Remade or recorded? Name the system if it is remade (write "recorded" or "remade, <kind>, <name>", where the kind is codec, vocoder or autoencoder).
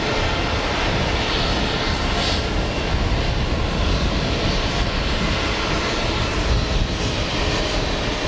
recorded